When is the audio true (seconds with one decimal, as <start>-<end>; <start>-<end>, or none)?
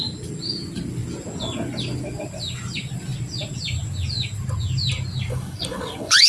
0.0-5.3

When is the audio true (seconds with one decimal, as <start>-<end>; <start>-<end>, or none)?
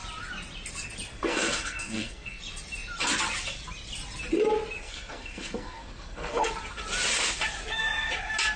0.0-1.1; 2.4-4.8; 6.5-8.6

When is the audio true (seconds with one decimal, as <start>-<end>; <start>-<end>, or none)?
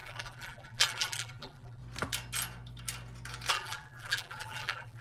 1.8-3.5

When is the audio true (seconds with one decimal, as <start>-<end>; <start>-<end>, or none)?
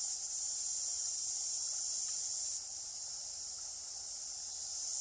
0.0-5.0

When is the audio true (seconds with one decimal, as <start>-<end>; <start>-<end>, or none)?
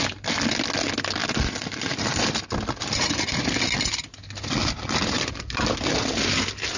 0.0-1.2; 3.4-4.6; 5.6-6.8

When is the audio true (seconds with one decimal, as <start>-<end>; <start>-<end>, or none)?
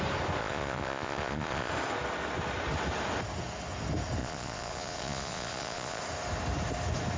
0.0-0.4; 1.7-4.2; 6.0-7.2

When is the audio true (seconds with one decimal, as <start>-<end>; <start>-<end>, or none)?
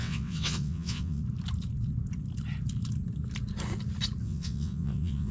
1.2-4.2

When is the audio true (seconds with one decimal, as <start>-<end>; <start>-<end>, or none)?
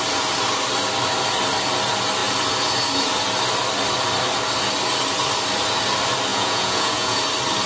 0.0-6.3; 7.2-7.7